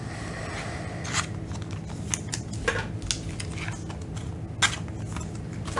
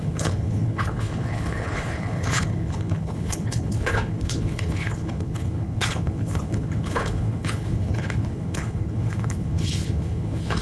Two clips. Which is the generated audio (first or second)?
second